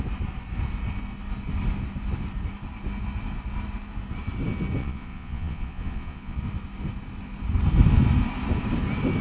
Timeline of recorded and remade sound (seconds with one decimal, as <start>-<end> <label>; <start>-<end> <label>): 0.0-4.8 recorded; 4.8-6.4 remade; 6.4-9.2 recorded